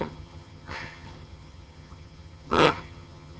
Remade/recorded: remade